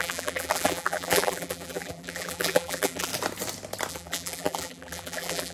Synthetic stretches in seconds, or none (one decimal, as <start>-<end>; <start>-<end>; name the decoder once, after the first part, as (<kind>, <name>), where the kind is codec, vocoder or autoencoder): 0.0-3.1 (vocoder, BigVGAN v2); 3.9-5.5